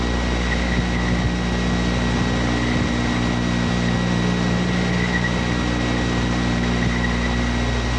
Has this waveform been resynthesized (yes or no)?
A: no